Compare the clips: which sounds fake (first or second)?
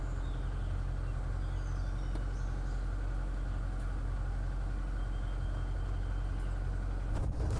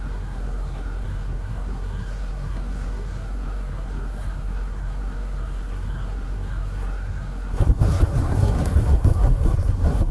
second